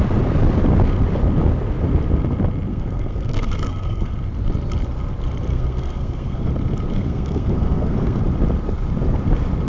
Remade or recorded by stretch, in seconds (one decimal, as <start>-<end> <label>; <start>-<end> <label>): 0.0-2.7 recorded; 2.7-4.1 remade; 4.1-5.5 recorded; 5.5-6.5 remade; 6.5-6.9 recorded; 6.9-8.2 remade; 8.2-9.7 recorded